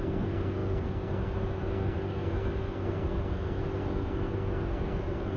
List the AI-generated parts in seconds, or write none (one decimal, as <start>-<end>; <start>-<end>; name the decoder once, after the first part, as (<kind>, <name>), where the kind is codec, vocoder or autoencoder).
0.0-5.4 (codec, SNAC)

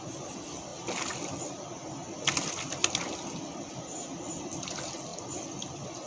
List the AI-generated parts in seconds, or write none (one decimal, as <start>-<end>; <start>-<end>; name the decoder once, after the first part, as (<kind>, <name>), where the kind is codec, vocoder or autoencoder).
none

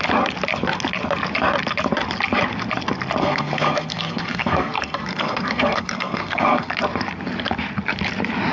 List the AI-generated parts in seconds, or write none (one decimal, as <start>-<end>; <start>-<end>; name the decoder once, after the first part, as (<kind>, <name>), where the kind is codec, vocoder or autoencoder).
3.2-6.7 (codec, SNAC)

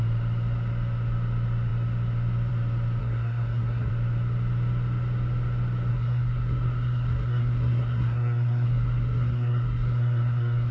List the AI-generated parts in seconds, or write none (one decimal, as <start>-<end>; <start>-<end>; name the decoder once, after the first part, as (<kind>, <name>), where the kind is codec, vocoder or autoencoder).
3.0-3.9 (codec, SNAC); 5.9-10.7

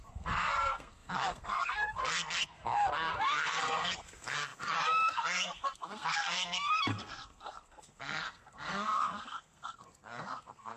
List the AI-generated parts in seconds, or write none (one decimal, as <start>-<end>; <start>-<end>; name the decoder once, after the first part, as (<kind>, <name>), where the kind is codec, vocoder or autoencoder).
0.0-10.8 (codec, SNAC)

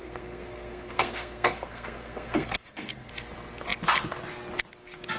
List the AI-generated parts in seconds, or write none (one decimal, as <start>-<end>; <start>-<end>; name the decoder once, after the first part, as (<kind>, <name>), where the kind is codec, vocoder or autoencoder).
0.0-3.1 (codec, SNAC)